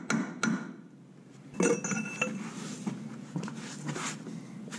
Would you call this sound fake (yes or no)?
no